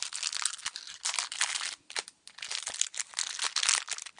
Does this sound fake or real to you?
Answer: real